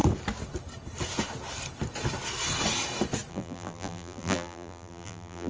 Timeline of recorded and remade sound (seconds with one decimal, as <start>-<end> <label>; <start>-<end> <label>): 0.0-3.3 recorded; 3.3-5.5 remade